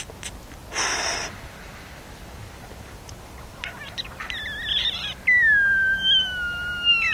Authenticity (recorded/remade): recorded